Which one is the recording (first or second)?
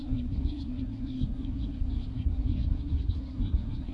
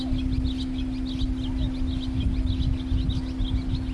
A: second